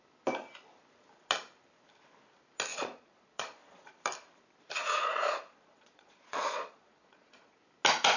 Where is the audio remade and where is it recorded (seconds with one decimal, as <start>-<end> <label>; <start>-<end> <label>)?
0.0-2.7 recorded; 2.7-4.0 remade; 4.0-4.8 recorded; 4.8-7.6 remade; 7.6-8.2 recorded